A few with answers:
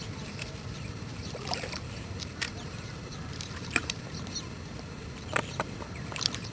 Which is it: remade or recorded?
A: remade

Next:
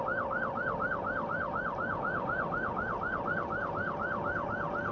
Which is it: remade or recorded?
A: recorded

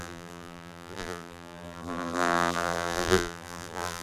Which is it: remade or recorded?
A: remade